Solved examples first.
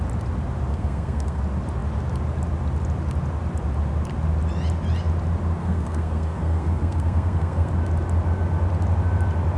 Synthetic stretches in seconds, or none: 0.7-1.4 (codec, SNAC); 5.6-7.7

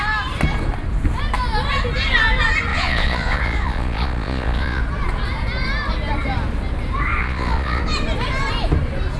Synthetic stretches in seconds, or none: 2.7-4.8 (vocoder, Vocos); 7.2-7.8

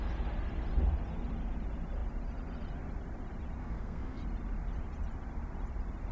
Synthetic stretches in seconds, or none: 3.6-4.2 (codec, SNAC)

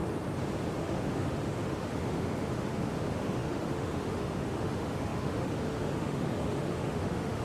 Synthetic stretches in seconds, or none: 0.8-7.4 (autoencoder, DAC-VAE)

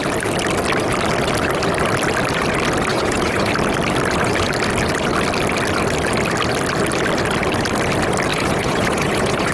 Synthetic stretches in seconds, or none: 2.9-3.5 (vocoder, Vocos); 8.3-9.5

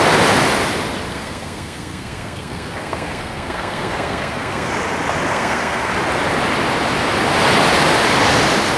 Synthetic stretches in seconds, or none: 1.1-4.7 (codec, SNAC); 5.3-5.9